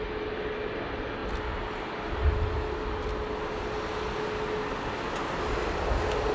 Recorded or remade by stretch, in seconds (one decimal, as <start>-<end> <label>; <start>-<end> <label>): 0.0-6.3 recorded